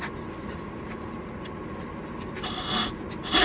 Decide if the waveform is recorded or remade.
recorded